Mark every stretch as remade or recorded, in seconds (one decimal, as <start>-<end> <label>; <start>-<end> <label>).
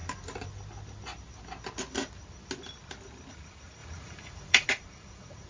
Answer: 0.0-3.3 recorded; 3.3-5.5 remade